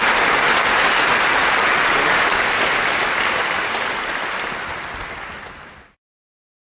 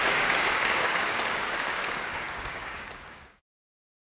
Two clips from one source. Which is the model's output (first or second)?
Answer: second